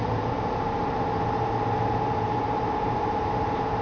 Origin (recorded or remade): remade